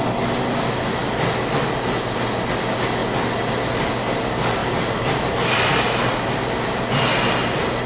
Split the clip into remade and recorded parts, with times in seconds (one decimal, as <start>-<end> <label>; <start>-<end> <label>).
0.0-4.6 recorded; 4.6-5.7 remade; 5.7-7.9 recorded